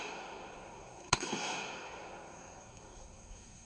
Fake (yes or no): yes